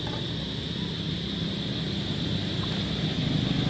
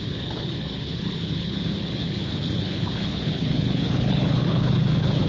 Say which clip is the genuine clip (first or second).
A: first